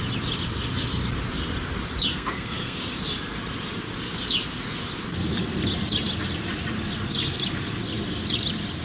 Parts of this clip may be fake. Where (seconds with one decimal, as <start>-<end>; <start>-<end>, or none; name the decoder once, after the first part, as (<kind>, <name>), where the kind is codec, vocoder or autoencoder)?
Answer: 2.1-2.8 (codec, SNAC)